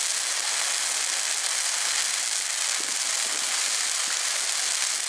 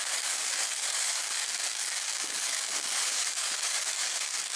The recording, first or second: first